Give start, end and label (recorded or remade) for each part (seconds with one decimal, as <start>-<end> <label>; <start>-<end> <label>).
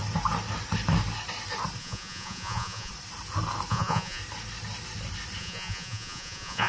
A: 0.0-1.8 recorded; 1.8-2.9 remade; 2.9-3.7 recorded; 3.7-4.2 remade; 4.2-5.4 recorded; 5.4-6.7 remade